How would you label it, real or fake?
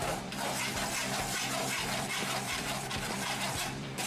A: fake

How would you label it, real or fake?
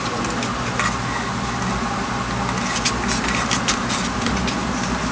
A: real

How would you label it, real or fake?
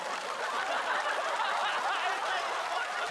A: real